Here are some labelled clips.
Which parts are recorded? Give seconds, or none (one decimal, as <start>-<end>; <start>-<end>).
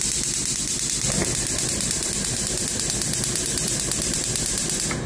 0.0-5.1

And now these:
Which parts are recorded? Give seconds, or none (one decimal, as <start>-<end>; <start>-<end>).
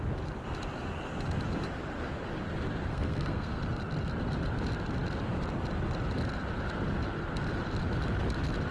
0.0-2.9; 3.6-8.7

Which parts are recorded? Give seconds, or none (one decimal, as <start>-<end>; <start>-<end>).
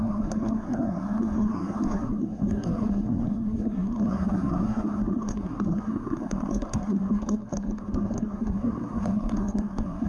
none